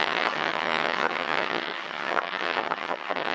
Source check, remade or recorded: remade